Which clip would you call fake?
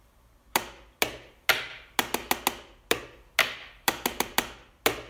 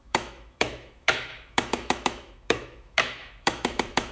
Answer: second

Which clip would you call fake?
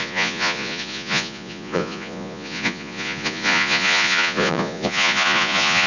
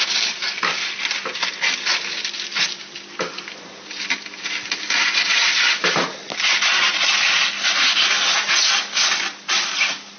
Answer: first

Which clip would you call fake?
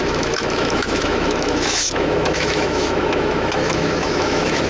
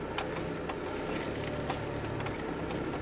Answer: first